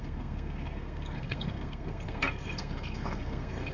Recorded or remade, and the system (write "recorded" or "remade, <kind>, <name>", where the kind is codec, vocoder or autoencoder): remade, codec, SNAC